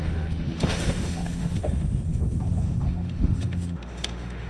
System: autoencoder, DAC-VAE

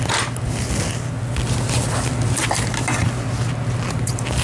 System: none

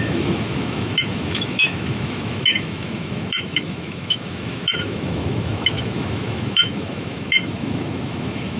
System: autoencoder, DAC-VAE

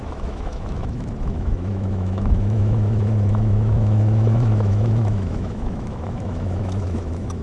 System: autoencoder, DAC-VAE